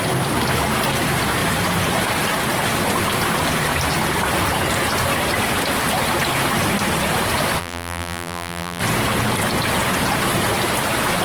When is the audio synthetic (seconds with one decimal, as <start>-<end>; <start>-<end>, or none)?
7.6-8.8